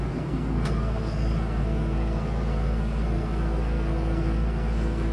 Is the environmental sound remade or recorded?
remade